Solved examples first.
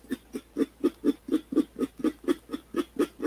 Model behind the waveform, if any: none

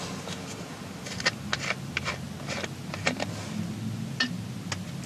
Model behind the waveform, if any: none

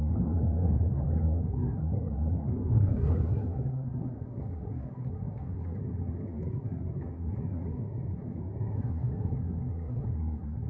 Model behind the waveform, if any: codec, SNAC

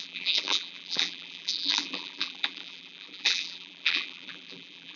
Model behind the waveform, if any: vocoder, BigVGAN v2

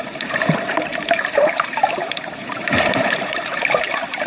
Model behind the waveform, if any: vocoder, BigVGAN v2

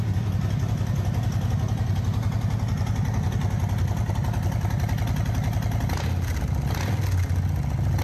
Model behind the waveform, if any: none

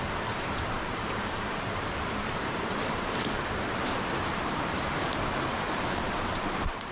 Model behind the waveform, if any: vocoder, BigVGAN v2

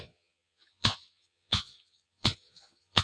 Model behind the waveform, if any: vocoder, Vocos